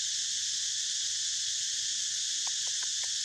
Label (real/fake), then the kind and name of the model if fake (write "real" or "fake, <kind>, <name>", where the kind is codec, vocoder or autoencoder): real